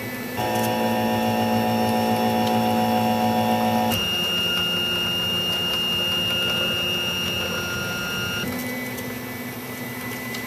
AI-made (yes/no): no